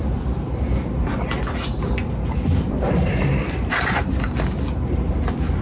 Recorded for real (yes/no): yes